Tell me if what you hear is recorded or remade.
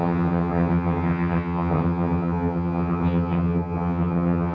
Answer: remade